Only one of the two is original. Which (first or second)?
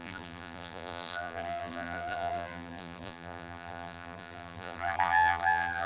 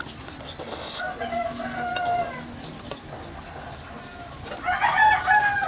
second